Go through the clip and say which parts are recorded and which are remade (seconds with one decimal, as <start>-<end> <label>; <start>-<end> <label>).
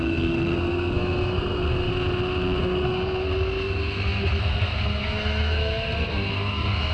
0.0-1.9 remade; 1.9-2.6 recorded; 2.6-6.9 remade